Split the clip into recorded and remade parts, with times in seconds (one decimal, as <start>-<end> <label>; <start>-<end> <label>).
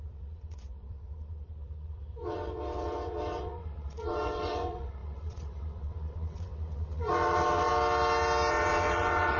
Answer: 0.0-7.7 remade; 7.7-8.5 recorded; 8.5-9.4 remade